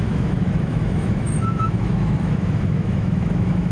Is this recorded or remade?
remade